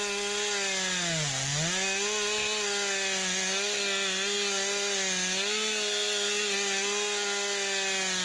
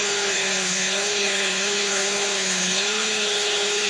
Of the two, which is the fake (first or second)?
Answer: second